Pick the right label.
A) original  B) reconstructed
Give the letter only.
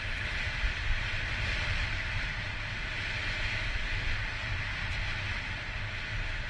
A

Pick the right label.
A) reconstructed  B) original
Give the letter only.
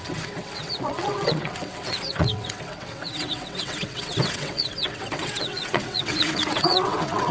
A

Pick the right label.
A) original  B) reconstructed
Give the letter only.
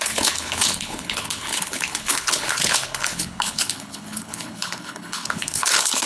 B